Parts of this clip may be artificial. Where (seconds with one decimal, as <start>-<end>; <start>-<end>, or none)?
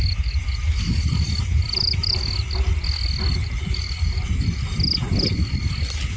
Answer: none